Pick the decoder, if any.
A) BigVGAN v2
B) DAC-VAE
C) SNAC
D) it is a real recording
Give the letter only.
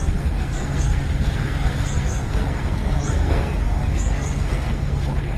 C